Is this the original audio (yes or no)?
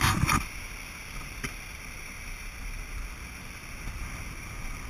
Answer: no